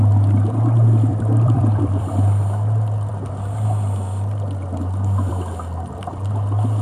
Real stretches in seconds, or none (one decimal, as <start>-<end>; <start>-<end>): 0.0-1.1; 2.2-6.8